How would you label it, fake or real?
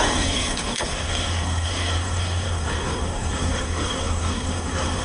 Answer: fake